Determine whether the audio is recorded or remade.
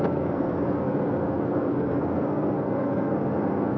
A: remade